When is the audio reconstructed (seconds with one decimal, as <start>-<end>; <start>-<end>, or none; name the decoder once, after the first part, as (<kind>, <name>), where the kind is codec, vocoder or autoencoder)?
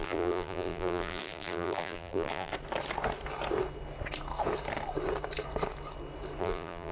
0.0-2.5 (vocoder, BigVGAN v2); 6.4-6.9